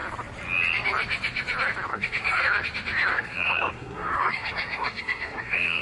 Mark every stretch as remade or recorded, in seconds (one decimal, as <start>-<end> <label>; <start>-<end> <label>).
0.0-1.9 recorded; 1.9-2.4 remade; 2.4-3.1 recorded; 3.1-5.8 remade